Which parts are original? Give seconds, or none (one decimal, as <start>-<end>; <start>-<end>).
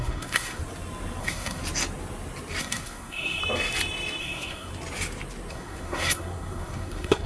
0.6-1.2; 1.6-2.6; 3.4-4.2; 4.7-5.5